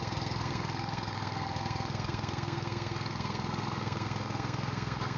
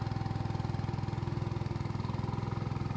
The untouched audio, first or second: second